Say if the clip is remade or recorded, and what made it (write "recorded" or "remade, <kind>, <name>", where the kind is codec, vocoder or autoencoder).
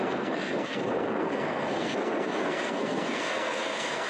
remade, codec, SNAC